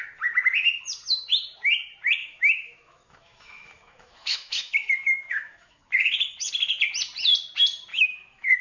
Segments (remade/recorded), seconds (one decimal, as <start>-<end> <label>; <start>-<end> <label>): 0.0-2.2 recorded; 2.2-6.5 remade; 6.5-7.9 recorded; 7.9-8.6 remade